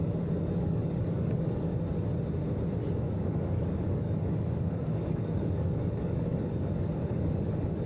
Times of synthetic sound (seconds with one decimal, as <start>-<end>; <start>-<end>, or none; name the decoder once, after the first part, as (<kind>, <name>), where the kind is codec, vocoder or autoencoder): 0.0-1.7 (codec, DAC); 2.9-7.9